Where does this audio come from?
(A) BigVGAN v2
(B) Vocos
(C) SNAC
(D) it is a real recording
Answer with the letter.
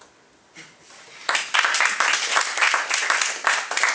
D